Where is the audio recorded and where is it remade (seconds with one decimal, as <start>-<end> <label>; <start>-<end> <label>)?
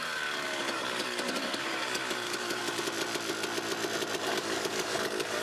0.0-2.6 remade; 2.6-4.2 recorded; 4.2-5.4 remade